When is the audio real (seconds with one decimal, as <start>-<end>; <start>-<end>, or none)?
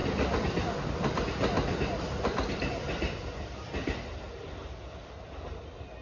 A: 0.0-6.0